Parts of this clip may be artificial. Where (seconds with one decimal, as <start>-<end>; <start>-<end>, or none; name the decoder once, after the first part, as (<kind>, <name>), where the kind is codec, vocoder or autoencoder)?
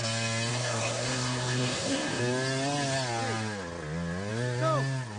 0.5-2.2 (codec, SNAC)